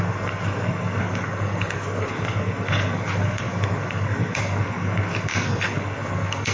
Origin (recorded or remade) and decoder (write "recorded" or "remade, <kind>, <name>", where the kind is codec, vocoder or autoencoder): remade, codec, SNAC